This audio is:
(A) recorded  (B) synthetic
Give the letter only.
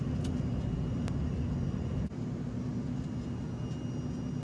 A